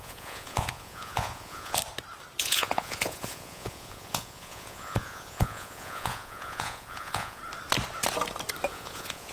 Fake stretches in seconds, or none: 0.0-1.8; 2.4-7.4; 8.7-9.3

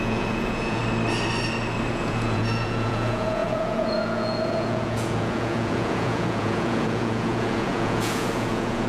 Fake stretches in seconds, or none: 0.0-0.8; 1.9-8.9

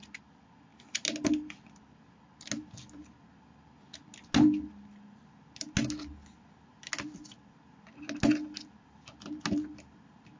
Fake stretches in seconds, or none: none

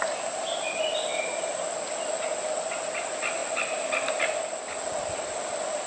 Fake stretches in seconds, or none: none